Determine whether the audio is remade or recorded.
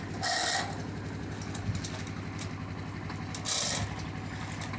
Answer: recorded